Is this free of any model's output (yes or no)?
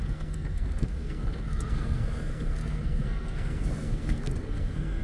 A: no